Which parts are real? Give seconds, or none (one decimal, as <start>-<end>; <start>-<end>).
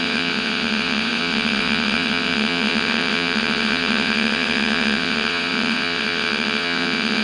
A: none